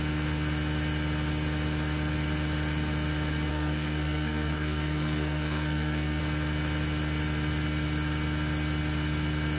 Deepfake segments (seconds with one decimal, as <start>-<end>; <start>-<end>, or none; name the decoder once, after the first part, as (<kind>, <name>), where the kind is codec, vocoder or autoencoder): 3.5-6.2 (codec, SNAC)